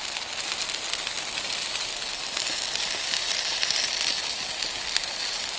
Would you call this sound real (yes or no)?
yes